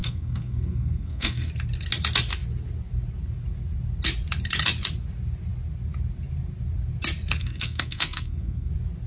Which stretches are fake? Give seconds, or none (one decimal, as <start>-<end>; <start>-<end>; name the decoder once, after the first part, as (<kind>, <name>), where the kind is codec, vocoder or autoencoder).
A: 0.0-1.5 (codec, SNAC); 7.4-8.7